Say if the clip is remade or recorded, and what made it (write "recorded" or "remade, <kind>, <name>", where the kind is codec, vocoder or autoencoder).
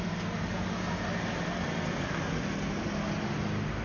recorded